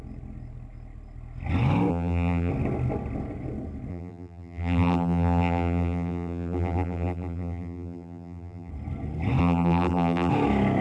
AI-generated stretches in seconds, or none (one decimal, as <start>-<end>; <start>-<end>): 1.9-2.5; 3.9-8.7; 9.4-10.3